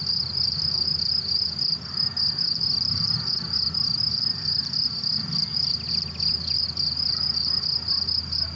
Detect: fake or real real